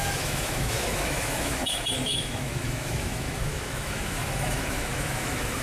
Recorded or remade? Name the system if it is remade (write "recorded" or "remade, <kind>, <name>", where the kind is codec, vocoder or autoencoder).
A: remade, autoencoder, DAC-VAE